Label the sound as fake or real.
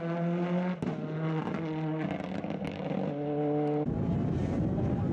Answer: real